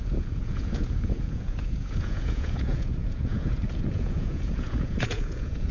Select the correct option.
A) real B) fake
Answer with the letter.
B